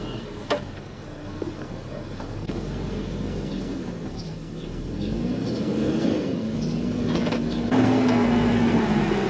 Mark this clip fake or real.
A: fake